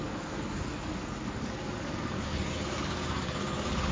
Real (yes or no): no